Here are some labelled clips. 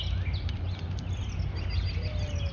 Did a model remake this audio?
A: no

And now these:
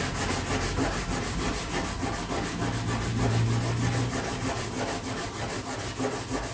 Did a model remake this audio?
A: no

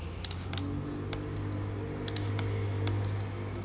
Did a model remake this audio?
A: no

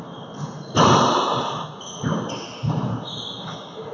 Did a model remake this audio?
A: no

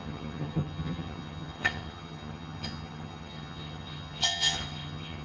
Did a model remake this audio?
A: yes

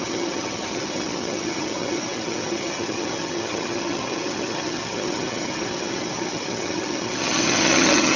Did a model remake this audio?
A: yes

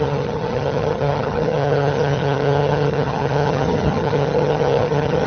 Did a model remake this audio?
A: yes